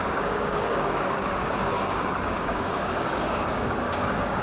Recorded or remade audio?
remade